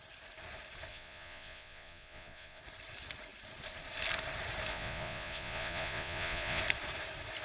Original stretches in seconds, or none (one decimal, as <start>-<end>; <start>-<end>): 0.0-0.9; 2.6-4.7; 6.6-7.4